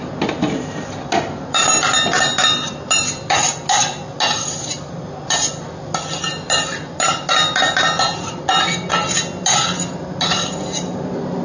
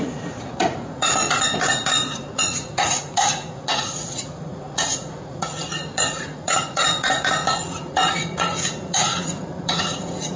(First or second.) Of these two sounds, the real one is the first